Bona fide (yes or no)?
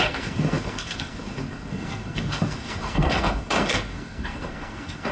no